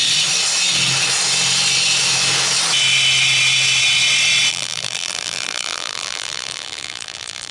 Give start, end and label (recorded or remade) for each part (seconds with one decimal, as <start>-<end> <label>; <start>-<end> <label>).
0.0-4.5 recorded; 4.5-7.5 remade